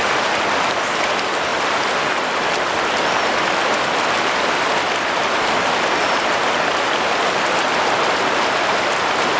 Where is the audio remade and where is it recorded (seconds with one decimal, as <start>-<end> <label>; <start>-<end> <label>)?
0.0-9.4 recorded